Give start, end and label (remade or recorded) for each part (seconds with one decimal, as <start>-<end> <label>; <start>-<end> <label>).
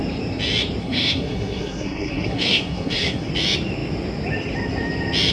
0.0-0.8 recorded; 0.8-3.3 remade; 3.3-5.3 recorded